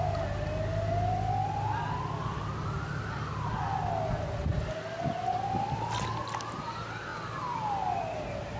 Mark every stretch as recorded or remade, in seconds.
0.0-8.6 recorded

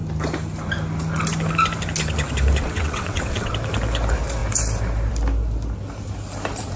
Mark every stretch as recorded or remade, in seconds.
0.0-2.6 recorded; 2.6-3.5 remade; 3.5-6.8 recorded